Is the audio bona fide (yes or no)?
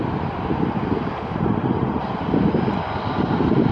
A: yes